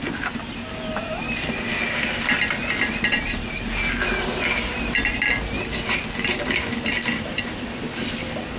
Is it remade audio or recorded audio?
recorded